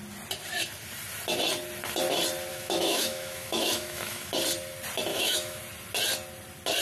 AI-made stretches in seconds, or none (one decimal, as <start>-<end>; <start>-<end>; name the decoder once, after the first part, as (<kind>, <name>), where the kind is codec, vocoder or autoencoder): 2.5-4.3 (autoencoder, DAC-VAE); 5.1-5.6